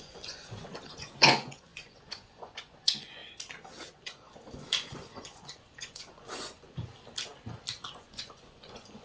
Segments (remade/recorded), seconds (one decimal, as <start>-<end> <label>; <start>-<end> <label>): 0.0-3.2 remade; 3.2-3.9 recorded; 3.9-6.9 remade; 6.9-7.9 recorded; 7.9-9.0 remade